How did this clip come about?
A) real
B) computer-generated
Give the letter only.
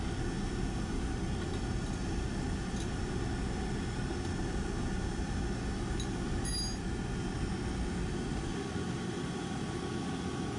A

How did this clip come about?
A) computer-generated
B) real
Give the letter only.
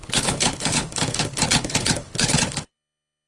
A